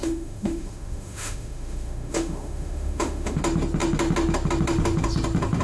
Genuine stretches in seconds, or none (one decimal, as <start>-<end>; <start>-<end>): 3.4-5.6